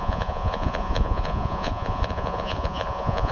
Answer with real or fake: fake